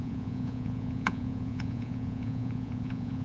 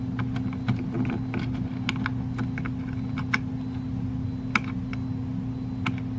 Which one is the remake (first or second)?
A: first